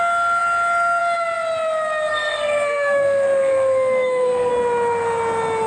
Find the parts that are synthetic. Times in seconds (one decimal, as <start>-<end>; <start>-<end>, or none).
2.1-4.5